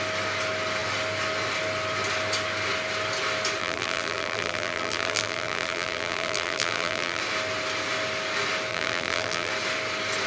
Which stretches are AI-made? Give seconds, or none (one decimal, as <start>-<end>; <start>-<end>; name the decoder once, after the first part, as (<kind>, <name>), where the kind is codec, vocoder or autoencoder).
3.6-7.2 (vocoder, BigVGAN v2); 8.7-9.5